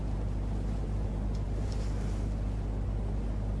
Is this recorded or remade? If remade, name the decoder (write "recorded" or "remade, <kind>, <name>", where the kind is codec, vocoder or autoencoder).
recorded